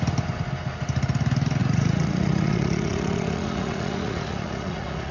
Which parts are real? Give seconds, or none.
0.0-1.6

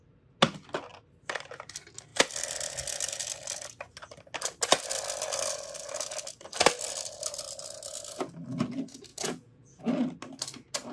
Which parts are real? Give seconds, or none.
0.0-9.1; 9.8-10.9

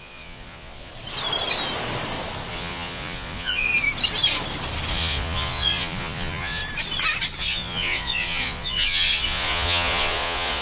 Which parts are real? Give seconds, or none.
0.9-2.5; 3.7-4.9; 6.6-7.4

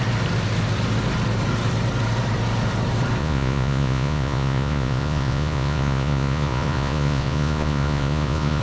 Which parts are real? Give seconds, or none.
0.0-3.2

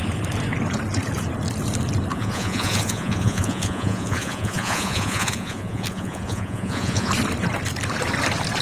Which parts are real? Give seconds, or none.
0.0-2.1; 7.1-8.6